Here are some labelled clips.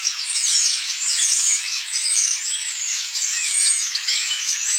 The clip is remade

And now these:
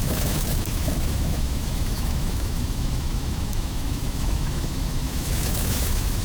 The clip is remade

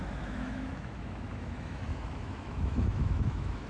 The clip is remade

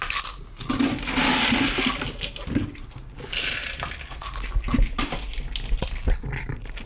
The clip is recorded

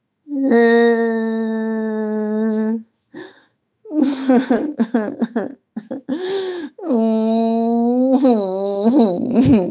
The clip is remade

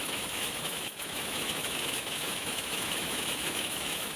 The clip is remade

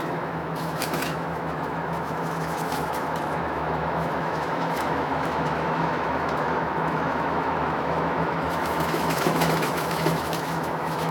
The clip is remade